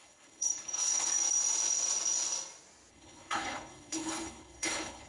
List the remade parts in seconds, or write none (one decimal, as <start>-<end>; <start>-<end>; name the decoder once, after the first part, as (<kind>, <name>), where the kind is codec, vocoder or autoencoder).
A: 0.0-1.1 (codec, HILCodec); 2.9-5.1